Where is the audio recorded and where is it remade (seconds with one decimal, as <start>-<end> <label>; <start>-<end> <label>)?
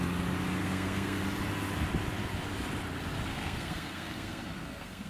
0.0-0.6 recorded; 0.6-1.2 remade; 1.2-3.3 recorded; 3.3-5.1 remade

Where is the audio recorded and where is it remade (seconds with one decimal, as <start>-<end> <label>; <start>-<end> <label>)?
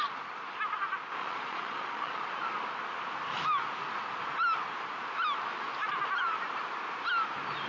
0.0-1.2 recorded; 1.2-2.2 remade; 2.2-7.7 recorded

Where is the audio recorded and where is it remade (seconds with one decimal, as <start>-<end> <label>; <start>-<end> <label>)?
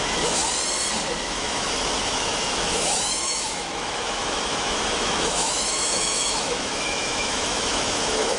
0.0-0.4 remade; 0.4-1.2 recorded; 1.2-8.4 remade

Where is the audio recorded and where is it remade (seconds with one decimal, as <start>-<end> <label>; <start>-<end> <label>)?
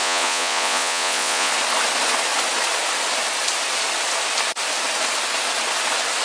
0.0-1.5 remade; 1.5-6.2 recorded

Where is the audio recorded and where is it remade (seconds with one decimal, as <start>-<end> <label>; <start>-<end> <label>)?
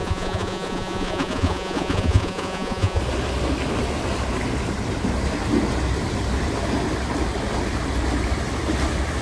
0.0-3.0 remade; 3.0-9.2 recorded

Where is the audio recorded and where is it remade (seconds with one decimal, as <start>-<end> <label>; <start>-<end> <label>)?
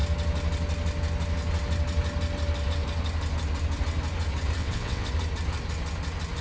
0.0-4.6 recorded; 4.6-5.1 remade; 5.1-6.4 recorded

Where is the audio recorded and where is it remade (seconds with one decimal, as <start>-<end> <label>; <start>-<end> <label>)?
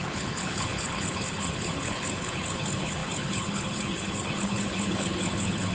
0.0-5.7 remade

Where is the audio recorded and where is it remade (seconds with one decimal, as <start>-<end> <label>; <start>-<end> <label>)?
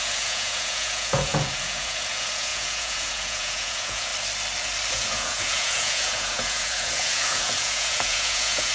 0.0-4.1 remade; 4.1-4.9 recorded; 4.9-8.7 remade